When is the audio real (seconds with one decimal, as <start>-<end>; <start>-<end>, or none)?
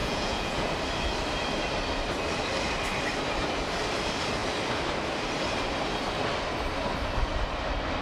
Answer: 0.7-8.0